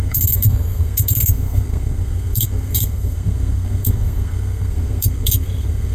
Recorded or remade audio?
remade